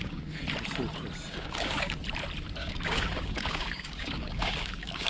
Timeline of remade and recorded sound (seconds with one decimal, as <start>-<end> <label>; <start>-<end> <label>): 0.0-0.4 remade; 0.4-1.3 recorded; 1.3-2.0 remade; 2.0-2.6 recorded; 2.6-5.1 remade